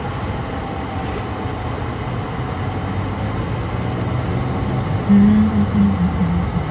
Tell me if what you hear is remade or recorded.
recorded